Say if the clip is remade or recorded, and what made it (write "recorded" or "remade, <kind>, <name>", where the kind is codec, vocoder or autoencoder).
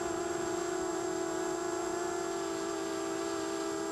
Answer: recorded